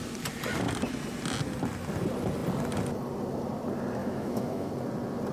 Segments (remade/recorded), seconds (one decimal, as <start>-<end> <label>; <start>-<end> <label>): 0.0-4.0 recorded; 4.0-4.7 remade; 4.7-5.3 recorded